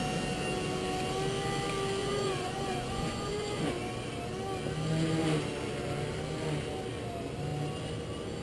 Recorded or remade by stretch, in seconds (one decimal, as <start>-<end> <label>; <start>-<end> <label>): 0.0-2.0 recorded; 2.0-3.7 remade; 3.7-8.4 recorded